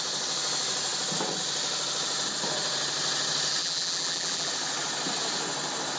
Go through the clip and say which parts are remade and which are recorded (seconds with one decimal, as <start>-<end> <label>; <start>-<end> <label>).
0.0-3.6 recorded; 3.6-4.5 remade; 4.5-6.0 recorded